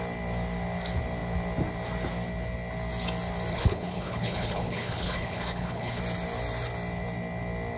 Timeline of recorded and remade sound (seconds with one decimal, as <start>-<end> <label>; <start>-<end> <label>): 0.0-3.5 recorded; 3.5-6.0 remade; 6.0-7.8 recorded